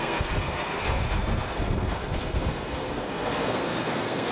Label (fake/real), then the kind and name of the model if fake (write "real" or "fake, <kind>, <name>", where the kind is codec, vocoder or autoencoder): fake, codec, SNAC